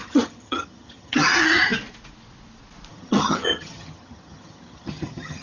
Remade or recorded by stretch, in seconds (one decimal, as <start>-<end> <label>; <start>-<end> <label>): 0.0-1.7 remade; 1.7-2.9 recorded; 2.9-5.4 remade